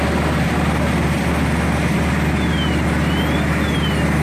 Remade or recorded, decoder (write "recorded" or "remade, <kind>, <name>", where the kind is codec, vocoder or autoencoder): recorded